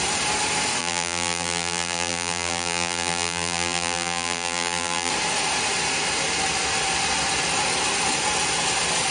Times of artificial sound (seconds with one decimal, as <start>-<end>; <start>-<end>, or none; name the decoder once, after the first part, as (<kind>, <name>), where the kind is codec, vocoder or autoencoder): 0.8-5.1 (vocoder, BigVGAN v2)